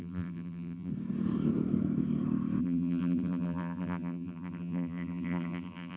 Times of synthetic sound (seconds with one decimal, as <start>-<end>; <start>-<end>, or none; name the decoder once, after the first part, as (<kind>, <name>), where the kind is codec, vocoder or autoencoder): 0.0-0.9 (vocoder, BigVGAN v2); 2.6-6.0